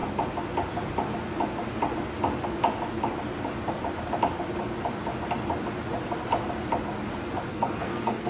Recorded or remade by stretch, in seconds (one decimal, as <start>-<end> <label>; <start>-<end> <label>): 0.0-7.5 recorded; 7.5-8.3 remade